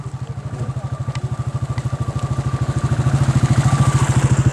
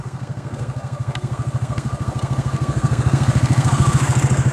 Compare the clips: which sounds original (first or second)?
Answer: first